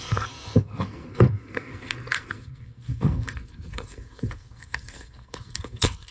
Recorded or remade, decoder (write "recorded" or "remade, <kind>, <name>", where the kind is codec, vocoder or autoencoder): remade, codec, SNAC